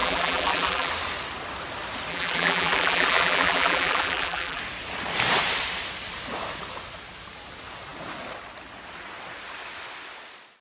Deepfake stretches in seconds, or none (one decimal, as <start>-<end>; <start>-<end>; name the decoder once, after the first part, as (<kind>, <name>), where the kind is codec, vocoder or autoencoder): 0.0-0.9 (vocoder, BigVGAN v2); 2.1-4.6